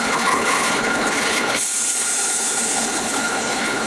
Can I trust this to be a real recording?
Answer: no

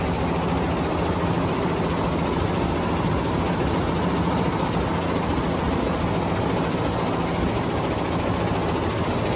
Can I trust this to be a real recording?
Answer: yes